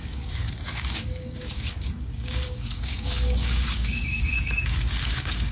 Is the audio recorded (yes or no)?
no